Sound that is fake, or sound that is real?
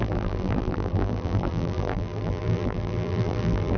fake